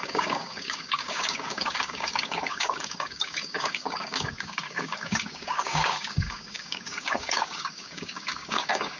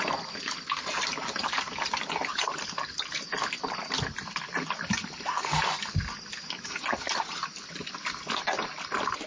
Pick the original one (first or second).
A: second